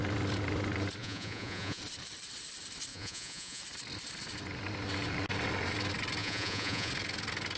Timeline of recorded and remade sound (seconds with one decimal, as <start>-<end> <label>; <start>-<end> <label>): 0.0-1.0 recorded; 1.0-1.8 remade; 1.8-2.9 recorded; 2.9-3.6 remade; 3.6-6.2 recorded; 6.2-6.9 remade; 6.9-7.6 recorded